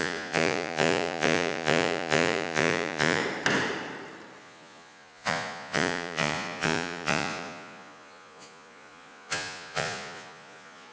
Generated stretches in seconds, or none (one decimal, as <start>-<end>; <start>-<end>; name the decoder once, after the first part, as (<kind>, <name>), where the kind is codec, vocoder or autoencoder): 0.0-3.2 (vocoder, Vocos); 4.4-10.9